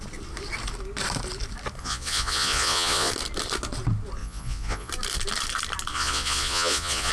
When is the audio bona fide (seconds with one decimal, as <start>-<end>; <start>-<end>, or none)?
0.0-1.8; 3.1-4.2; 4.9-5.9